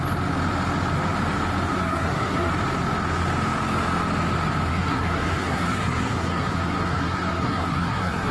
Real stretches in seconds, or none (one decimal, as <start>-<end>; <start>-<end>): 0.0-1.7; 2.5-4.7